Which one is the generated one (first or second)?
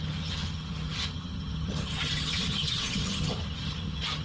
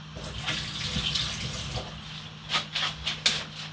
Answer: first